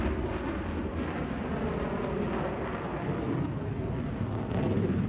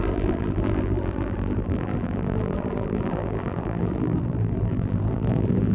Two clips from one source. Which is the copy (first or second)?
second